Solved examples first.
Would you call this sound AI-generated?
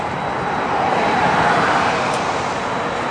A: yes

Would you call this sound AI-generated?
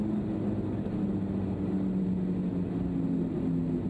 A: no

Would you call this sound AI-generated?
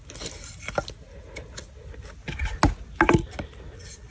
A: no